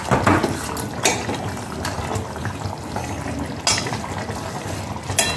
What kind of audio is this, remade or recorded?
recorded